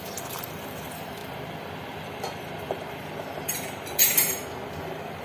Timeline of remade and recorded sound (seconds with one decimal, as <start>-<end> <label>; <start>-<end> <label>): 0.0-1.2 remade; 1.2-2.6 recorded; 2.6-4.4 remade; 4.4-5.2 recorded